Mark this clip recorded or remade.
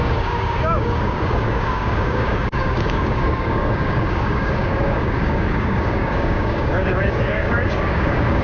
remade